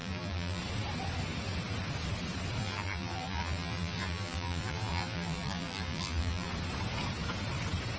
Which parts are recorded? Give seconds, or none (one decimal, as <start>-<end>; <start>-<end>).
0.6-2.6; 6.5-8.0